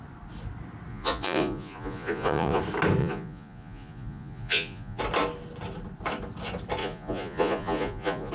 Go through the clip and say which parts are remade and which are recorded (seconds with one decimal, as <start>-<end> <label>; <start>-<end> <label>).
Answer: 0.0-0.9 recorded; 0.9-2.6 remade; 2.6-3.0 recorded; 3.0-5.0 remade; 5.0-6.8 recorded; 6.8-8.3 remade